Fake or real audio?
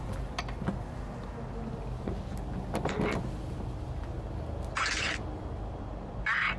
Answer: real